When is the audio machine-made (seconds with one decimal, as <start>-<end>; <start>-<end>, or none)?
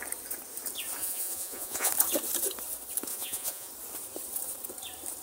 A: 1.0-1.9; 3.1-3.7